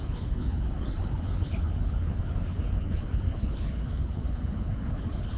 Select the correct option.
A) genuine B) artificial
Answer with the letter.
B